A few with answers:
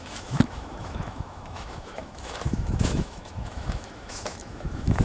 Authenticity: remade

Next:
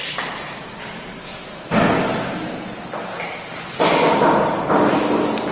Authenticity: recorded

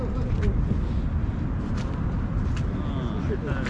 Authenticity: recorded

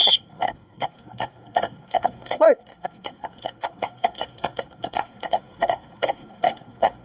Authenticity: remade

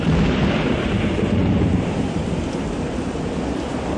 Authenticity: recorded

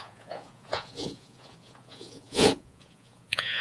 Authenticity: remade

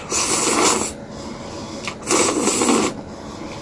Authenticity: recorded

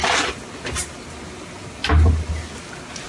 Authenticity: recorded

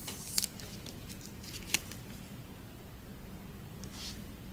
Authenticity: recorded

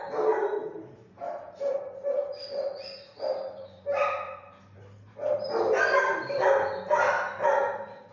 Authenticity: recorded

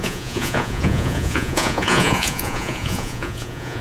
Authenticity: remade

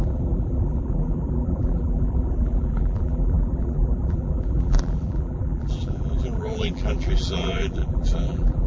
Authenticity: remade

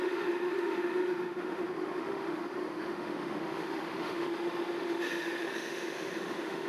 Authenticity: remade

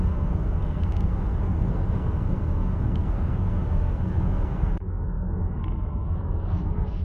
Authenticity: remade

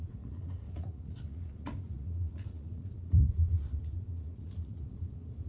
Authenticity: remade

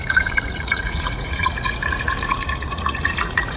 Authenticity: remade